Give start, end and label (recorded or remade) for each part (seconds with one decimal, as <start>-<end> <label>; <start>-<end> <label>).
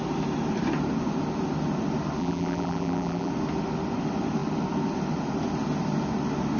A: 0.0-2.2 recorded; 2.2-3.3 remade; 3.3-6.6 recorded